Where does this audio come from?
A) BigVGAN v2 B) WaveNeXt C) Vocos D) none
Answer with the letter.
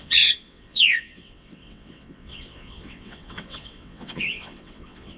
B